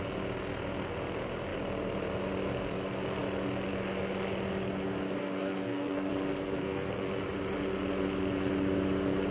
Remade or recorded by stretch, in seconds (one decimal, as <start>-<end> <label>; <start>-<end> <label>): 0.0-5.2 recorded; 5.2-6.1 remade; 6.1-6.5 recorded; 6.5-7.1 remade; 7.1-9.3 recorded